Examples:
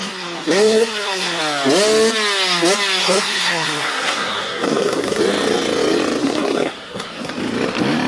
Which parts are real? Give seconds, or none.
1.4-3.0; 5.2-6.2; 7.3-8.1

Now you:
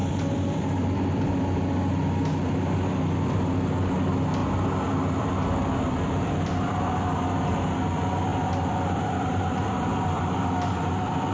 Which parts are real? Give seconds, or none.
0.6-4.4; 6.8-8.3